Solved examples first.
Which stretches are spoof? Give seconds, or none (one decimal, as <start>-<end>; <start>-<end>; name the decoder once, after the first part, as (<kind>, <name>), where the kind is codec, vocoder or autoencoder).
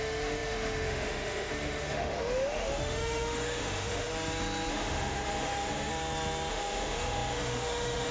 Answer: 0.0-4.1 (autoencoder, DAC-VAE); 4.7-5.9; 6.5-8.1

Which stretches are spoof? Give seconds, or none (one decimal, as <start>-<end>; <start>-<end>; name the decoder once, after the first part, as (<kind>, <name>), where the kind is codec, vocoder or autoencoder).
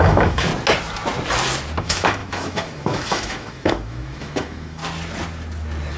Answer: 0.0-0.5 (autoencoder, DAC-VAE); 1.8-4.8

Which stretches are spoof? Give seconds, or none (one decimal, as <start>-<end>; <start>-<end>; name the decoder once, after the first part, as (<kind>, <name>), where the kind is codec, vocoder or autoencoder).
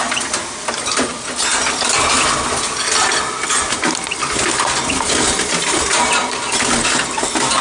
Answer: none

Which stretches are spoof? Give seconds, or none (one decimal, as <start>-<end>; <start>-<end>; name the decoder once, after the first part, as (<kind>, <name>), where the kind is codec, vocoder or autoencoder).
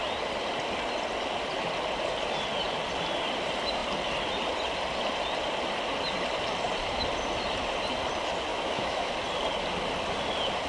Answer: 8.5-9.1 (autoencoder, DAC-VAE)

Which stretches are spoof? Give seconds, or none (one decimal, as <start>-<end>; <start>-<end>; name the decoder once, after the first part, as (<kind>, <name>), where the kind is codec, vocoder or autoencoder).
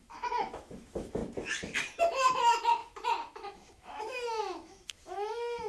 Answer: 0.0-1.2 (autoencoder, DAC-VAE); 2.0-5.7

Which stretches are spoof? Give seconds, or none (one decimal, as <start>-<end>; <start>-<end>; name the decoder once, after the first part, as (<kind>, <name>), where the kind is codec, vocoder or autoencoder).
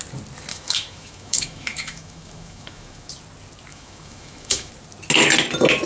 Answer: 0.5-3.1 (autoencoder, DAC-VAE); 3.7-4.7